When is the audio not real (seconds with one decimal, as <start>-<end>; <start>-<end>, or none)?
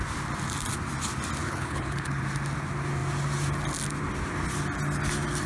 1.4-2.2